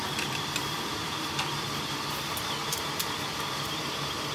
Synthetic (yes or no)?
yes